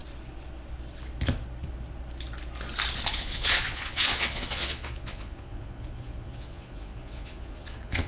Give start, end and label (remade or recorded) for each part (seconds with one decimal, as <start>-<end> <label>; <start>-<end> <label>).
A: 0.0-3.1 recorded; 3.1-8.1 remade

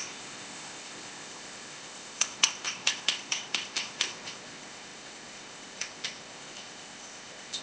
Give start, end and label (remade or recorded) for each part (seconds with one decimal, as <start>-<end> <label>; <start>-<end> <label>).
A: 0.0-7.6 remade